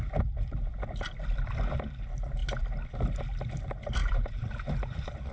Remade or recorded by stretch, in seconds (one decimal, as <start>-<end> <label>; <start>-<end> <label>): 0.0-4.0 recorded; 4.0-5.3 remade